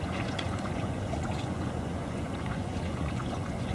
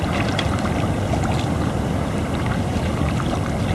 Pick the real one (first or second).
second